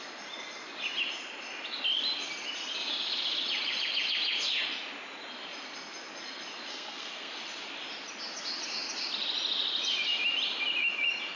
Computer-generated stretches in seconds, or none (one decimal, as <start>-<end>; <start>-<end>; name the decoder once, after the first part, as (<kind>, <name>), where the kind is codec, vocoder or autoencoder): 6.7-7.3 (codec, SNAC)